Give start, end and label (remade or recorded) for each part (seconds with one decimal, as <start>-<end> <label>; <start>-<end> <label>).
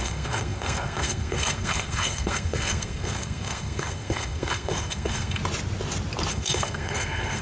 0.0-5.4 remade; 5.4-6.3 recorded; 6.3-7.4 remade